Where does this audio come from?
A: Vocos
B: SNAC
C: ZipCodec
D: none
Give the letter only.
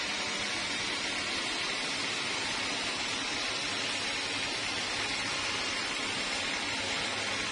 D